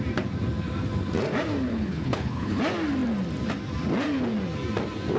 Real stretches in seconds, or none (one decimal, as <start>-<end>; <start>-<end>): 0.0-1.7; 2.6-5.2